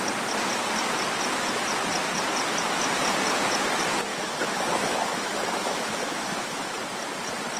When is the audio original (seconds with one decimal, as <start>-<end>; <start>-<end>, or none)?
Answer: 0.0-4.1; 6.7-7.6